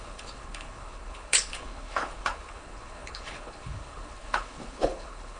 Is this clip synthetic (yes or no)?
yes